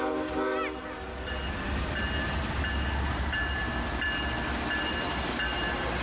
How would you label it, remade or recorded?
recorded